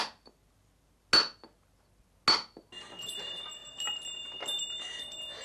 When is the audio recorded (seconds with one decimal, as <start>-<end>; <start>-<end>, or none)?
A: 0.0-5.4